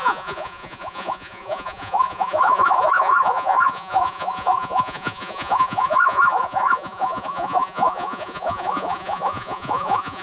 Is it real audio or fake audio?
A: fake